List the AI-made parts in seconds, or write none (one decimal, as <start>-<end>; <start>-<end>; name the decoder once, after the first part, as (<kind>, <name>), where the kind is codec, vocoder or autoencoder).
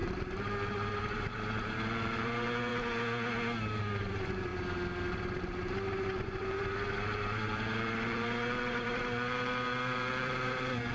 0.0-2.7 (vocoder, BigVGAN v2); 3.8-4.5; 5.1-10.9